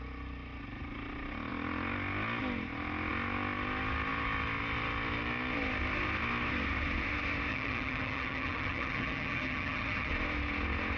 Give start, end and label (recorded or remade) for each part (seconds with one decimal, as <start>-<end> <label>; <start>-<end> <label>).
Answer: 0.0-7.5 recorded; 7.5-10.1 remade; 10.1-11.0 recorded